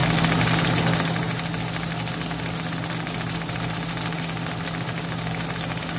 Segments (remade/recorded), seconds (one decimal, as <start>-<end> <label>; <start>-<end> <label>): 0.0-6.0 recorded

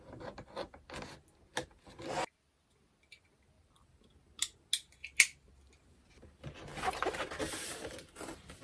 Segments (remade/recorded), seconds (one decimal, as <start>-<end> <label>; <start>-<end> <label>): 0.0-8.6 recorded

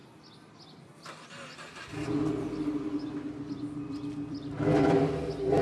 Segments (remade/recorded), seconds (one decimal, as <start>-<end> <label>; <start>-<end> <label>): 0.0-2.4 recorded; 2.4-5.6 remade

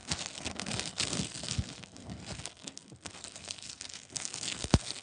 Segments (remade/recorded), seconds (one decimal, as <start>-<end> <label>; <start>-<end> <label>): 0.0-5.0 remade

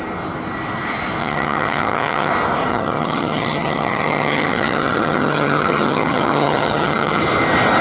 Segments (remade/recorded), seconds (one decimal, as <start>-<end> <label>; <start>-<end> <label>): 0.0-1.2 recorded; 1.2-2.3 remade; 2.3-2.7 recorded; 2.7-7.2 remade; 7.2-7.8 recorded

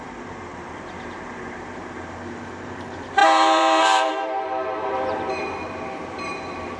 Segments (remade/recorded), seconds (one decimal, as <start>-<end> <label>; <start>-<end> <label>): 0.0-6.8 remade

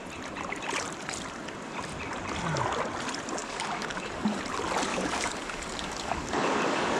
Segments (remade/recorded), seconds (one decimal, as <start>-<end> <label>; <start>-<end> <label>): 0.0-3.4 recorded; 3.4-4.4 remade; 4.4-4.9 recorded; 4.9-7.0 remade

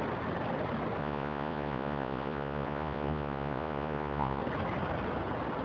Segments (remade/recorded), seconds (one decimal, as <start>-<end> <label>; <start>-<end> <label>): 0.0-1.0 recorded; 1.0-4.4 remade; 4.4-5.6 recorded